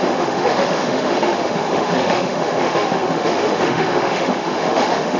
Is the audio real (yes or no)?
no